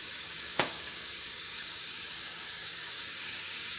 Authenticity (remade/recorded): remade